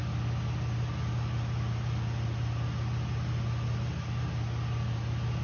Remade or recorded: recorded